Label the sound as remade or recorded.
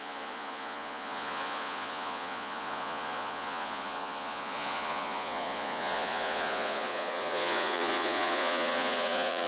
remade